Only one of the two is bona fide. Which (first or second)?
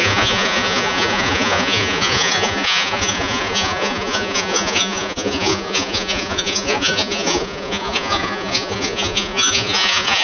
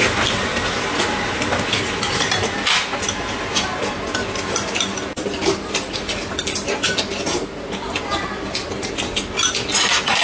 second